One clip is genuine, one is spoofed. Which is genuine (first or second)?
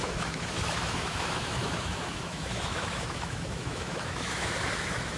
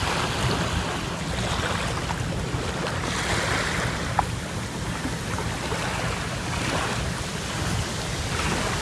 second